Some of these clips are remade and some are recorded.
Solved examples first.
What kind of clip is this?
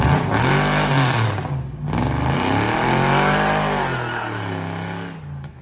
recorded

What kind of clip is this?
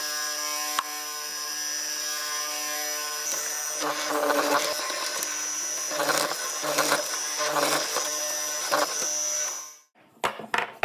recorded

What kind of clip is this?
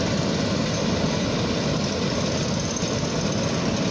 recorded